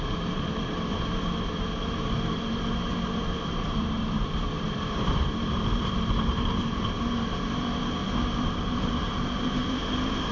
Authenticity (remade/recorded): remade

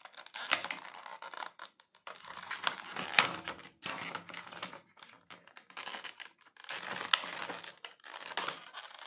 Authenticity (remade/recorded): recorded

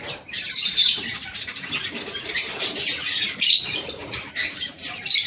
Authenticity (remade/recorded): remade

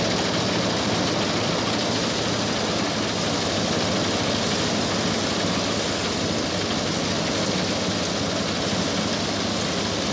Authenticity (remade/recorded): recorded